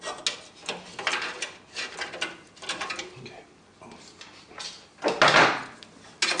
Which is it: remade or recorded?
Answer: recorded